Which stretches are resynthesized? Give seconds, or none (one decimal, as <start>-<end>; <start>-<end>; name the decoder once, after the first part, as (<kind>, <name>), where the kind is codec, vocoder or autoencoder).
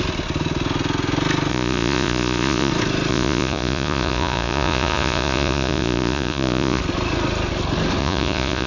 1.5-2.7 (vocoder, Vocos); 3.1-6.8; 8.0-8.7